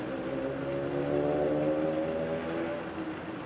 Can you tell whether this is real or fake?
real